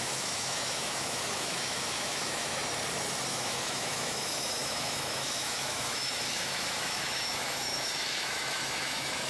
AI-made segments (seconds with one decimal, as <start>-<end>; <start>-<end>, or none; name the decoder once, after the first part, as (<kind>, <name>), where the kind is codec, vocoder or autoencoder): 0.0-2.6 (autoencoder, DAC-VAE); 3.3-9.3